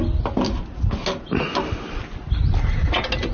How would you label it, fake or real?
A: real